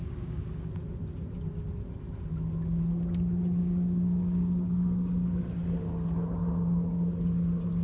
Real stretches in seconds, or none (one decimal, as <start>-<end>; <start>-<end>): 0.7-3.6; 5.4-7.8